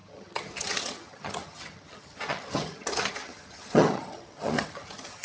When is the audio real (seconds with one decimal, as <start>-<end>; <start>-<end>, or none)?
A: none

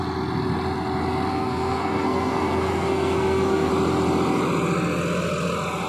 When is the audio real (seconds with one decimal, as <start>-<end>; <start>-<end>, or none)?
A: 0.0-1.3; 3.7-5.9

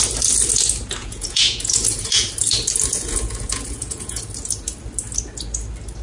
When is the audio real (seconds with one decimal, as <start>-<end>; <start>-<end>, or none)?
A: 0.0-1.0; 2.3-2.9; 4.2-6.0

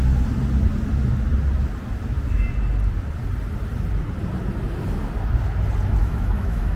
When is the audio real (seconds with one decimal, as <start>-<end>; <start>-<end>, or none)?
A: 0.0-6.0

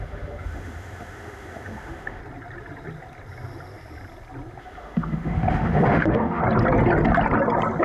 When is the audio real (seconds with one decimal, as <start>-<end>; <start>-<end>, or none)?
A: 2.2-4.6; 6.4-7.8

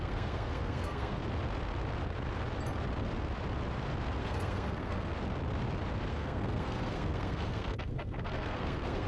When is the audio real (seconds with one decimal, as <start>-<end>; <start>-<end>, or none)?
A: 1.2-4.2; 5.1-6.1

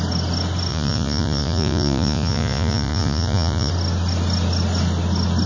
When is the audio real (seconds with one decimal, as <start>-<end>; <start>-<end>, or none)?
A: 0.0-0.7; 3.7-5.5